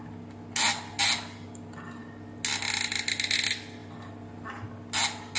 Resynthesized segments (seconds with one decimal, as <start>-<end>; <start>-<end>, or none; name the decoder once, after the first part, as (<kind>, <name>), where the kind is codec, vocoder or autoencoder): 3.8-4.5 (vocoder, BigVGAN v2)